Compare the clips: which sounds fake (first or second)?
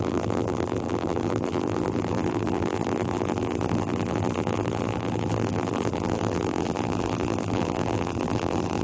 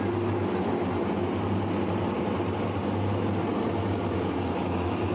first